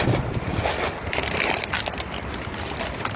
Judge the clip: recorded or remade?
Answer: recorded